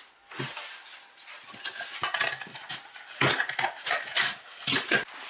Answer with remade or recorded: recorded